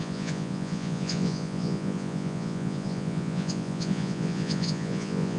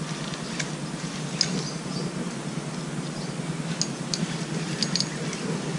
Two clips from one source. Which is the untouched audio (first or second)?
second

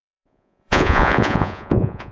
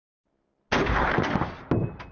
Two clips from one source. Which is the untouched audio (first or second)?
second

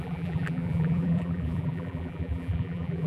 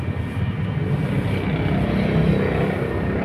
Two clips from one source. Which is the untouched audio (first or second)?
second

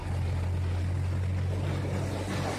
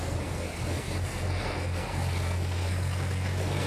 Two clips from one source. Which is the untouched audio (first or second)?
first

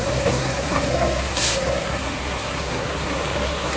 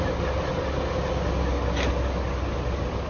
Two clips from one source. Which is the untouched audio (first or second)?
second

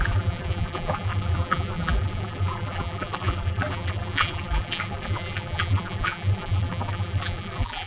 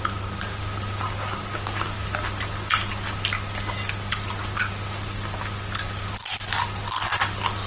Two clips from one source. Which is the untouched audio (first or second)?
second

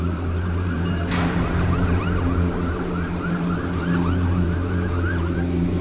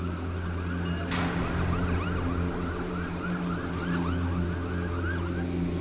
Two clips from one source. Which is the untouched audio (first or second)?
second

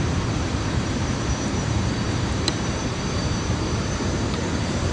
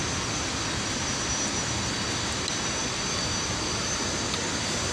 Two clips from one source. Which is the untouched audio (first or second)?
second